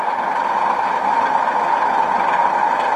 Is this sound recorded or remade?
recorded